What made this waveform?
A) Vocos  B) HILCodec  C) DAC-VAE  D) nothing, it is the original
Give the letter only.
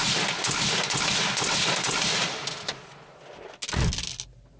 D